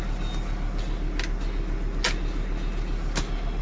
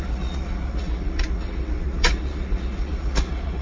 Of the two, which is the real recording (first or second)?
first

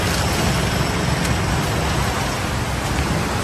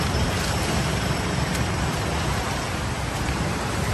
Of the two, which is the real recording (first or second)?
first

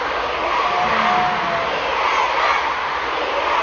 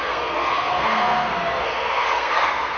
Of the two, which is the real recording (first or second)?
first